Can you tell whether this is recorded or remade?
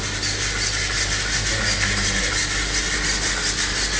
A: recorded